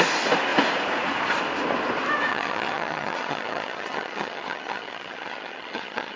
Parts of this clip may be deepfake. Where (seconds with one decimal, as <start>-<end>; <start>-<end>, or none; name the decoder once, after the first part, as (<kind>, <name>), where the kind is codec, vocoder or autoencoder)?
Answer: 2.3-6.2 (vocoder, HiFi-GAN)